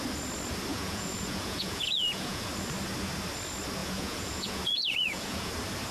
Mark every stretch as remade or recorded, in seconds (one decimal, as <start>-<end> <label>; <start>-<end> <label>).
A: 0.0-0.7 recorded; 0.7-2.5 remade; 2.5-3.8 recorded; 3.8-5.5 remade; 5.5-5.9 recorded